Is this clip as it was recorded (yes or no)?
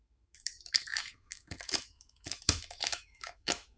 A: no